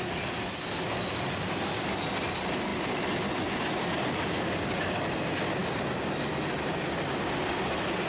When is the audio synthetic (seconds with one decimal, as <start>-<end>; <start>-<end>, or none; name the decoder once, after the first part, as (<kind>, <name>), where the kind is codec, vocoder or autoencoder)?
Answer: none